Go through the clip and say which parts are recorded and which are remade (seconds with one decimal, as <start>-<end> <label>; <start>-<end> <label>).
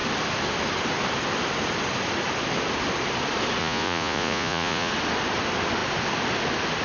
0.0-3.6 recorded; 3.6-4.9 remade; 4.9-6.8 recorded